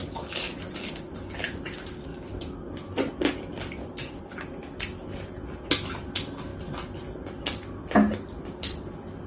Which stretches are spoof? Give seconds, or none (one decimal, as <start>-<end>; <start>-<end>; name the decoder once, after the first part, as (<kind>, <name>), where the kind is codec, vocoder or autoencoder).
none